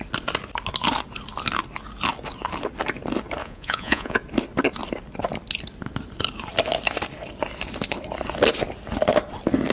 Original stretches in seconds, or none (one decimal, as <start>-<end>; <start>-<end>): 0.0-3.4; 4.2-9.7